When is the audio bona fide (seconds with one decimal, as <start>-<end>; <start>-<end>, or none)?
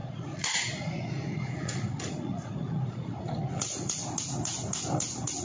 4.0-5.4